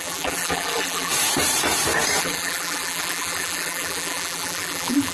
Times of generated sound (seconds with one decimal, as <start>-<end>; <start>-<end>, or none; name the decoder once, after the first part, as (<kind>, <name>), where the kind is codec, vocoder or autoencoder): 0.0-1.1 (vocoder, BigVGAN v2); 2.2-5.1